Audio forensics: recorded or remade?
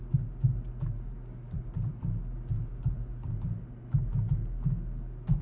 recorded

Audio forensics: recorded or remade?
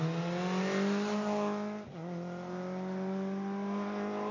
recorded